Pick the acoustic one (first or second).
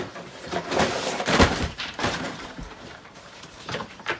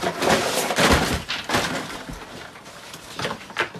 second